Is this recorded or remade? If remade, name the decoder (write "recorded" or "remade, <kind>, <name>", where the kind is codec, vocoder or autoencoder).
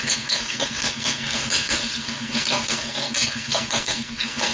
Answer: remade, codec, SNAC